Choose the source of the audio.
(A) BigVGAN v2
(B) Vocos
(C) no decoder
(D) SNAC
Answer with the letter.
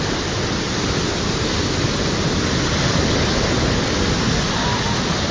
C